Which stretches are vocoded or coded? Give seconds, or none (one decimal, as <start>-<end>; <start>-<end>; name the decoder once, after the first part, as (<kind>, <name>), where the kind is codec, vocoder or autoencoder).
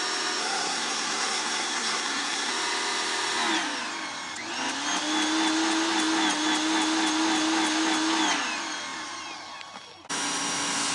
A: 0.4-2.5 (codec, SNAC)